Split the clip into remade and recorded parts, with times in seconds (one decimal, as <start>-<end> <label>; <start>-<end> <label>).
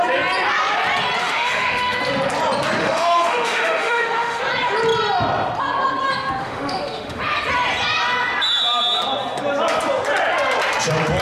0.0-1.2 recorded; 1.2-2.0 remade; 2.0-2.8 recorded; 2.8-4.4 remade; 4.4-6.4 recorded; 6.4-7.2 remade; 7.2-11.2 recorded